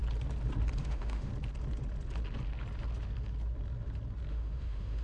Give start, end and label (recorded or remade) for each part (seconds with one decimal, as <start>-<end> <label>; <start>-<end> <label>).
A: 0.0-0.8 recorded; 0.8-1.3 remade; 1.3-4.3 recorded; 4.3-5.0 remade

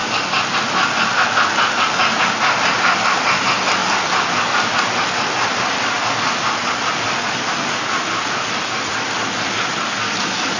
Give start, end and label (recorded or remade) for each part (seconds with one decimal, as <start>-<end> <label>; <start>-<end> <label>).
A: 0.0-10.6 recorded